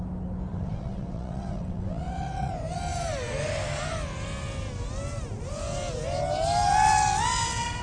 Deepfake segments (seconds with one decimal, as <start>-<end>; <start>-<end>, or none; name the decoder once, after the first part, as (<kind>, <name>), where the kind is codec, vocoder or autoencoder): 0.5-2.5 (vocoder, WaveNeXt)